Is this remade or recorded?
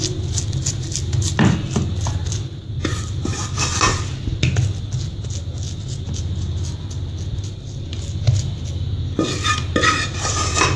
recorded